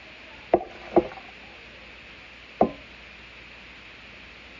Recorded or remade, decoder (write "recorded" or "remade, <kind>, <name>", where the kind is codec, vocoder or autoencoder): recorded